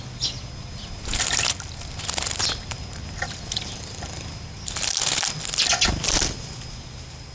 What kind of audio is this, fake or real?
real